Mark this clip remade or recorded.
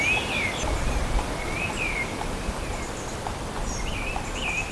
recorded